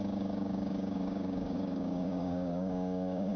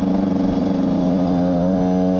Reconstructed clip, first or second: first